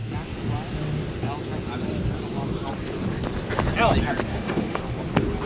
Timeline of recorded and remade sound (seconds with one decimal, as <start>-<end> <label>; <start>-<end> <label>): 0.0-4.3 recorded; 4.3-4.8 remade; 4.8-5.5 recorded